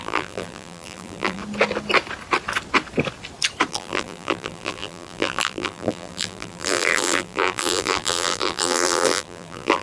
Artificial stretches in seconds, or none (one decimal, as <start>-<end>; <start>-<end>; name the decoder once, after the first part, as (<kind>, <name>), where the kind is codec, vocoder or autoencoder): 0.0-1.4 (vocoder, BigVGAN v2); 3.7-9.8